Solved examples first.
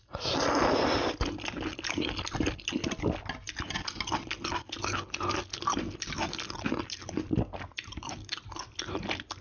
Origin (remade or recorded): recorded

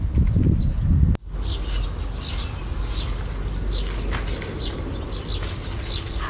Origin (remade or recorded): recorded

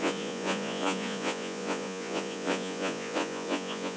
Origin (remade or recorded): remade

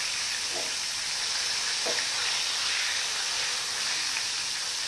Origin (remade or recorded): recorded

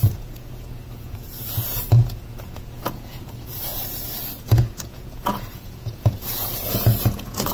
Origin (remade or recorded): remade